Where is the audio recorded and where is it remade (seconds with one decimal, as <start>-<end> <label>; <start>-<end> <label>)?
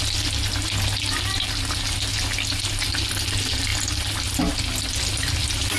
0.0-5.8 recorded